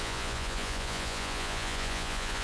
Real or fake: fake